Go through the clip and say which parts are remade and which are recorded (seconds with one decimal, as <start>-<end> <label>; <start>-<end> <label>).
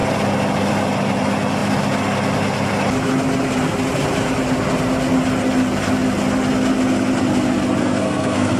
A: 0.0-7.8 recorded; 7.8-8.6 remade